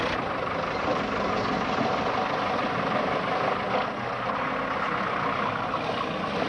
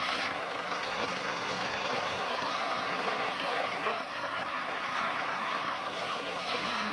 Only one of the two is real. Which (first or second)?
first